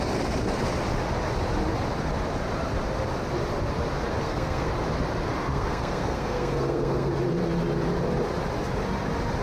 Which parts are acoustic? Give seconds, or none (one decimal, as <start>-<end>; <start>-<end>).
0.0-4.1; 4.7-5.5; 7.1-9.4

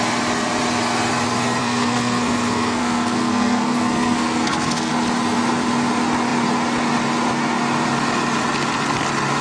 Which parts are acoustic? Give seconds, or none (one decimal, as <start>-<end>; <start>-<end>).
0.0-1.6; 4.9-9.4